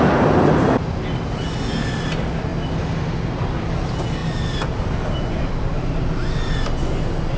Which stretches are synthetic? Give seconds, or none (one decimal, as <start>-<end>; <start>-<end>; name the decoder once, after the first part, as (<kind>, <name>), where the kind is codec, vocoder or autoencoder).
none